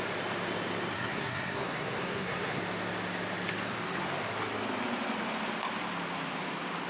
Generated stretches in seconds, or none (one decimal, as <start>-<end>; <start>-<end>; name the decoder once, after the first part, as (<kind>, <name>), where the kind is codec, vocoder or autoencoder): 0.9-2.6 (codec, SNAC)